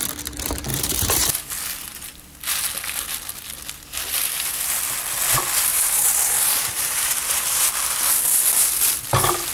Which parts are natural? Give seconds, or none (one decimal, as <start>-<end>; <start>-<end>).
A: 0.0-0.7; 1.5-5.7; 7.7-9.5